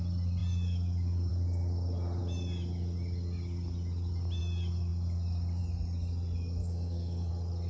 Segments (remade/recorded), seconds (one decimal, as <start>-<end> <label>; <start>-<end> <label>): 0.0-6.6 recorded; 6.6-7.3 remade; 7.3-7.7 recorded